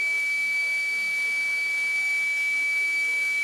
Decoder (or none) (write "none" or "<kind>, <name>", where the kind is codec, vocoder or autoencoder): autoencoder, DAC-VAE